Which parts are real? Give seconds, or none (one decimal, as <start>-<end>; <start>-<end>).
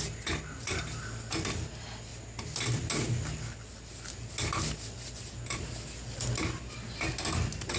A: 0.0-7.8